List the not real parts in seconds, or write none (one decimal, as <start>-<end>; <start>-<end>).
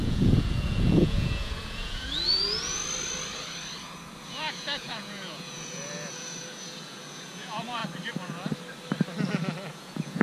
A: 0.0-2.8; 4.3-7.8; 9.7-10.2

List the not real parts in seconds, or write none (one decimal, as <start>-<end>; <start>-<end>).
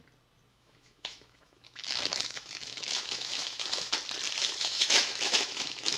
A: 0.5-3.9; 4.4-6.0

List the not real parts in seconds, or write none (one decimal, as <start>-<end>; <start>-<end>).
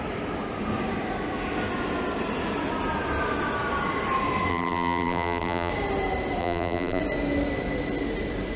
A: 4.5-5.7; 6.4-7.0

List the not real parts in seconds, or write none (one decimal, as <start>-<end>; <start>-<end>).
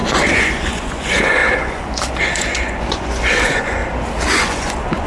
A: 0.0-3.8; 4.4-5.1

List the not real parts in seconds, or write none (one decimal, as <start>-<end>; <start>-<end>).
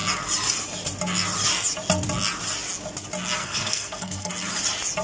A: 3.4-4.3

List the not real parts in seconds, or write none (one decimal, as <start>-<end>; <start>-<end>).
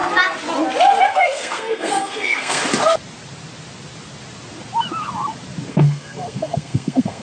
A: 1.0-2.6; 5.7-7.2